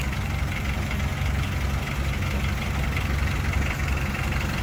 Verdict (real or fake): real